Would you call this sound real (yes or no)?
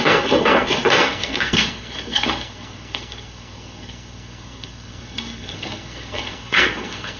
no